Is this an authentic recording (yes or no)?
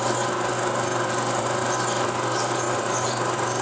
yes